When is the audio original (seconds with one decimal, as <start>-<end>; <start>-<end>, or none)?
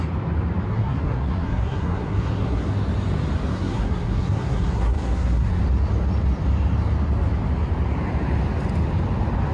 0.0-0.7; 2.7-3.5; 5.6-9.5